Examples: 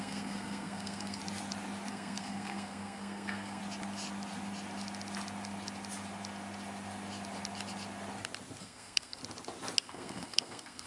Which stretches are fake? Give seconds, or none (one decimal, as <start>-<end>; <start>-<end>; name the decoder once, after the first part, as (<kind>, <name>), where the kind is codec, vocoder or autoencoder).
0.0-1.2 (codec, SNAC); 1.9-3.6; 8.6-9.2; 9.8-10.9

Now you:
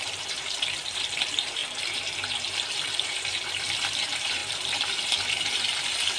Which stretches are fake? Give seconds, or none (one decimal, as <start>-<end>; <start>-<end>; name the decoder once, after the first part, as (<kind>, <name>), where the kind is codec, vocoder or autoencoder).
0.0-6.2 (vocoder, BigVGAN v2)

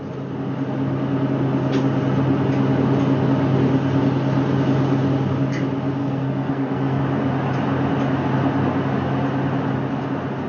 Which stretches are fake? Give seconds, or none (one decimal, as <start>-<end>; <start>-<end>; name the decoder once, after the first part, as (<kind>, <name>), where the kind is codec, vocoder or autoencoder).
6.0-7.0 (codec, SNAC)